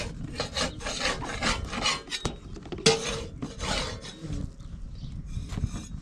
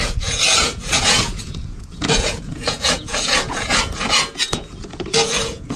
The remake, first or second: second